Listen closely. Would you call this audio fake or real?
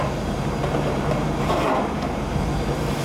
fake